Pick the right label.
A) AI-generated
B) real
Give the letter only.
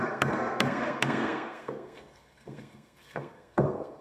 A